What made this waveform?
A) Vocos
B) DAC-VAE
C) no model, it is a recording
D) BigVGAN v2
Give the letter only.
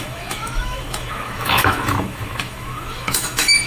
B